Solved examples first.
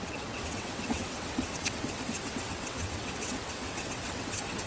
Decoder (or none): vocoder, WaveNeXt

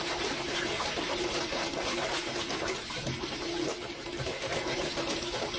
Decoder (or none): none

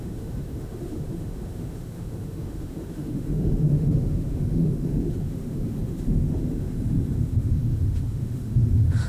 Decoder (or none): autoencoder, DAC-VAE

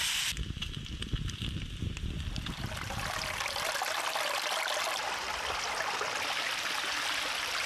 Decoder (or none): none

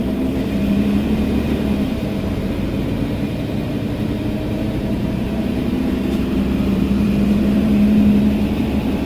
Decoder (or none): vocoder, BigVGAN v2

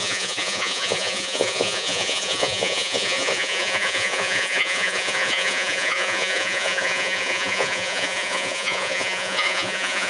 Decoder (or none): vocoder, Vocos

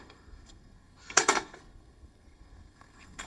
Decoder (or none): codec, SNAC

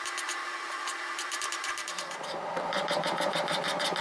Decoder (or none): vocoder, BigVGAN v2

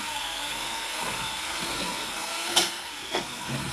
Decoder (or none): codec, SNAC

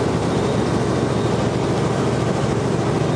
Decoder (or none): none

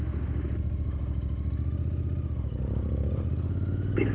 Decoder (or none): none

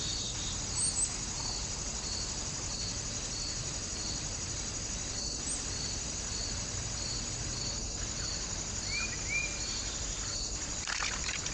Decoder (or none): none